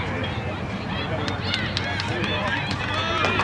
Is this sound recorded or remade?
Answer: recorded